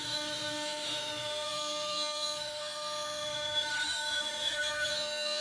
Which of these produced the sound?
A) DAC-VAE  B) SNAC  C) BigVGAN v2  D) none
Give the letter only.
A